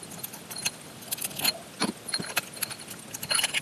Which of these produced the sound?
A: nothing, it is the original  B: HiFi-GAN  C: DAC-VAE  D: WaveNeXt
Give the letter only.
A